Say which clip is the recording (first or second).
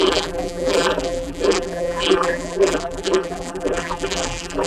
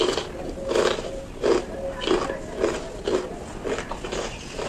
second